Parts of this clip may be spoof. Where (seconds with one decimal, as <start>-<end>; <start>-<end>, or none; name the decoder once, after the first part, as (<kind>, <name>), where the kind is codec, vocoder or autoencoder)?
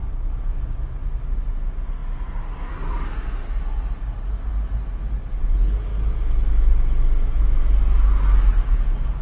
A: 0.0-0.9 (vocoder, BigVGAN v2)